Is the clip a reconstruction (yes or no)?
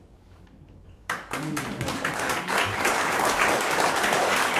yes